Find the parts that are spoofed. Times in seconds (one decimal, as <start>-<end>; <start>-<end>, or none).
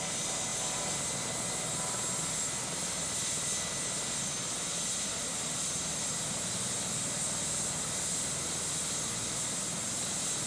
none